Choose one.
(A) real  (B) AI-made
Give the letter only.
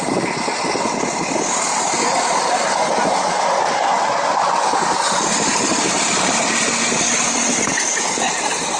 A